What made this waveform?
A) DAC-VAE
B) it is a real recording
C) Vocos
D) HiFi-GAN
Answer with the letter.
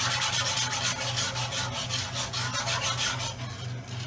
B